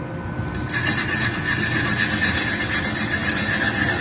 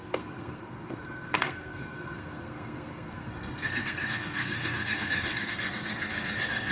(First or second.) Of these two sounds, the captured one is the first